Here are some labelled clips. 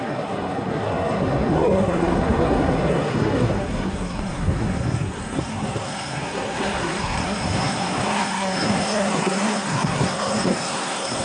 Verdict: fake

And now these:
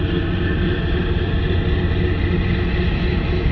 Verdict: real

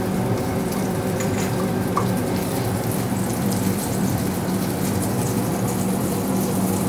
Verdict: fake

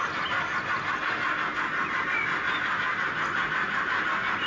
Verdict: real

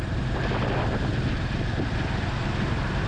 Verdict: real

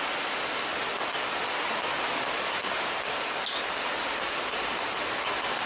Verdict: real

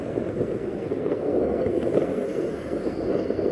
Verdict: fake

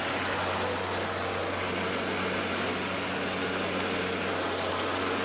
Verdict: real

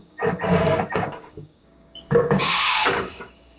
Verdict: fake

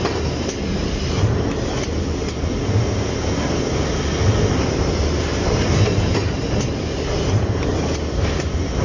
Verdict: real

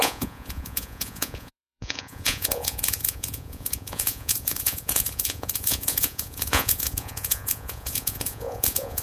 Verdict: fake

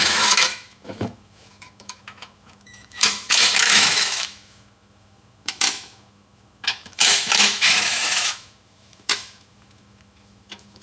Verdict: fake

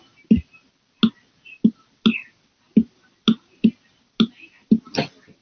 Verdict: real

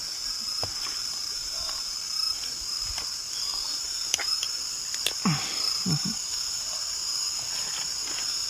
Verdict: real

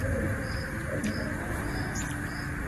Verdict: real